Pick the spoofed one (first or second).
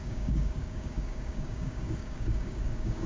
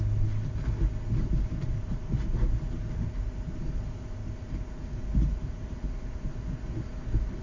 first